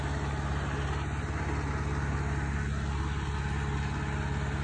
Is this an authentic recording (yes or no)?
yes